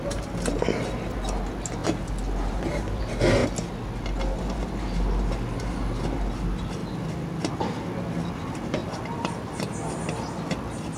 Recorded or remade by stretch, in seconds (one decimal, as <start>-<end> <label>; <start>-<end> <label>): 0.0-8.8 recorded; 8.8-9.4 remade; 9.4-11.0 recorded